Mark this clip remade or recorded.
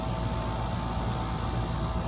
recorded